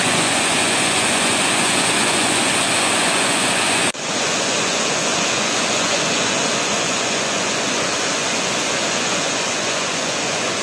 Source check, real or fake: fake